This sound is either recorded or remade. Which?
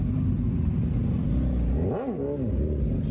recorded